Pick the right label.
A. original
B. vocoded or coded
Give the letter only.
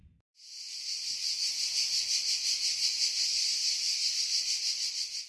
A